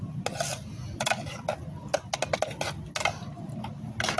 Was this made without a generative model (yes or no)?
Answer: yes